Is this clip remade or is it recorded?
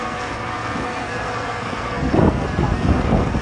remade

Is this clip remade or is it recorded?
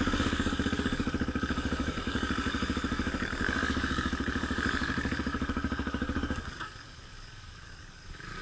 remade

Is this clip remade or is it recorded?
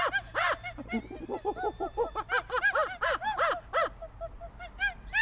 recorded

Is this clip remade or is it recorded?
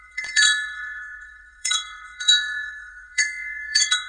remade